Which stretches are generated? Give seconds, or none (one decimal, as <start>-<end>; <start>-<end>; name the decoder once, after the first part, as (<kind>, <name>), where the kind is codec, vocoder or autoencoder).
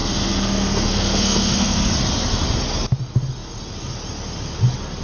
0.0-1.9 (codec, SNAC)